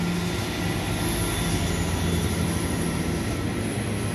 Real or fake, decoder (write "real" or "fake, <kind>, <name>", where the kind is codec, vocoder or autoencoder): real